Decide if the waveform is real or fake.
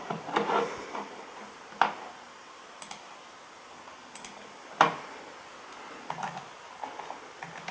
real